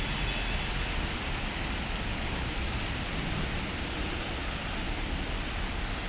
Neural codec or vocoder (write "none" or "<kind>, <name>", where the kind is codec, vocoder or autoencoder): none